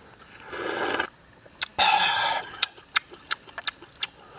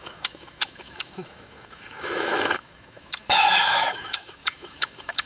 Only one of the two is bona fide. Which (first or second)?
first